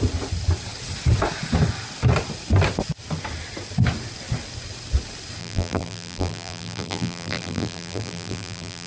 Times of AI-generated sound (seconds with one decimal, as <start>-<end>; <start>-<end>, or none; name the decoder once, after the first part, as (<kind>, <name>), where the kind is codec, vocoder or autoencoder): 5.4-8.9 (vocoder, BigVGAN v2)